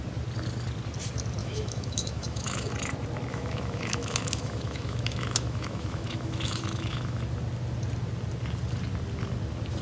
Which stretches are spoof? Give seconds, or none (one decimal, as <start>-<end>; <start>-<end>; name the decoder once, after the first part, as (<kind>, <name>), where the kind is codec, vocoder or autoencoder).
1.4-2.7 (autoencoder, DAC-VAE); 3.3-7.2